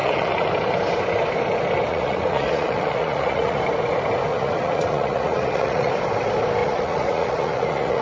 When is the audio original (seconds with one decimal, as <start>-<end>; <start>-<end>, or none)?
0.5-1.9; 3.6-4.3; 5.9-6.6